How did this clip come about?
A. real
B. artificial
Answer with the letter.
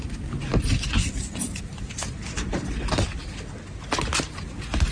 A